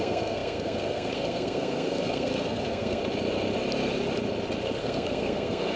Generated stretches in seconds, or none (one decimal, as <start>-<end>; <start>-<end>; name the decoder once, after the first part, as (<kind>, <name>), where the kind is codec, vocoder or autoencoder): 0.0-3.0 (codec, SNAC); 4.8-5.8